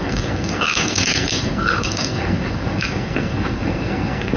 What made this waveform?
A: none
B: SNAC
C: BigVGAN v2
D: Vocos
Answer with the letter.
B